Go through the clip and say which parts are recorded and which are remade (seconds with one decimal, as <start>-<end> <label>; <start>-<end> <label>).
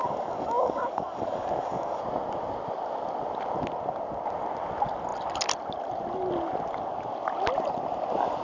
0.0-2.0 remade; 2.0-8.4 recorded